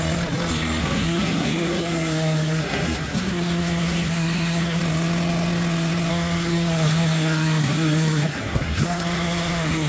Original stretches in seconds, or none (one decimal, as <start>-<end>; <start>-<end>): 0.0-0.8; 4.8-6.1